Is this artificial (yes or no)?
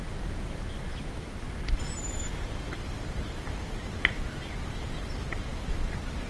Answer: no